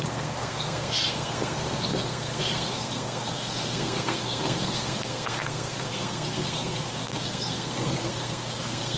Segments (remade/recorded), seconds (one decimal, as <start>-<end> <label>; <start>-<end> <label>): 0.0-9.0 remade